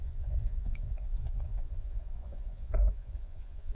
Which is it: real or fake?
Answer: fake